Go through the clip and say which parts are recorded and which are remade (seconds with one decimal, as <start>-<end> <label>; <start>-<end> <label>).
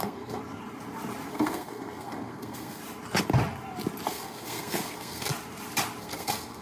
0.0-0.4 remade; 0.4-1.3 recorded; 1.3-2.8 remade; 2.8-4.1 recorded; 4.1-5.3 remade; 5.3-6.0 recorded; 6.0-6.6 remade